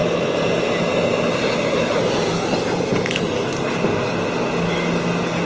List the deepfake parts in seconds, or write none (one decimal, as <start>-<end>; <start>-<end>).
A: 0.0-3.2